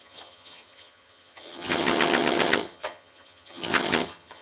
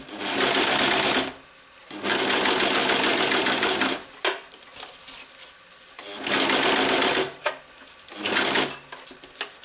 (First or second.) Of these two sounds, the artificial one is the first